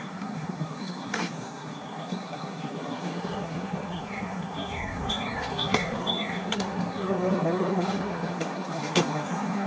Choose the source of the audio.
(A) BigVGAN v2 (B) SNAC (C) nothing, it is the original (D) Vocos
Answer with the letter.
B